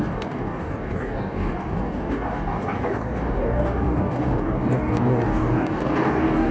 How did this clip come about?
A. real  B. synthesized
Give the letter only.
B